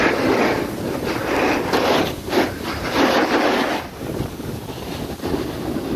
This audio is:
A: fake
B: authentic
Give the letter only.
B